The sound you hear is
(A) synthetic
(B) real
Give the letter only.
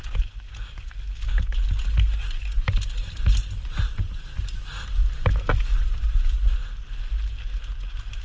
B